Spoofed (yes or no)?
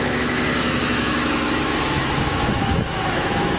yes